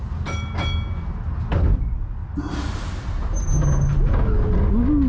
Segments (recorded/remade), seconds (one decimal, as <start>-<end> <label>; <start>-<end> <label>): 0.0-5.1 recorded